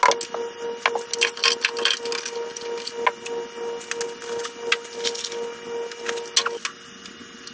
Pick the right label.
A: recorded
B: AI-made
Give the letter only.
A